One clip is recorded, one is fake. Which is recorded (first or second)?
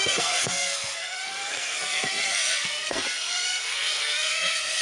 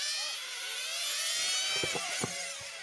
second